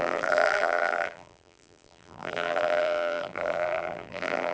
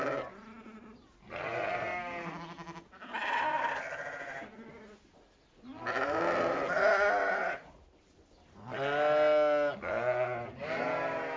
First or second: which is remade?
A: first